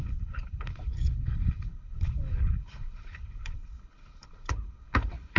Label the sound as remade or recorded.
remade